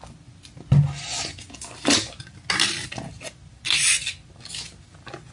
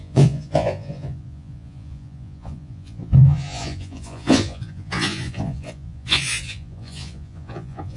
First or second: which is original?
first